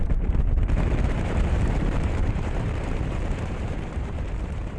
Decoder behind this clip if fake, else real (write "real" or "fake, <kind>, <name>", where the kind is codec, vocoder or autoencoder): fake, vocoder, BigVGAN v2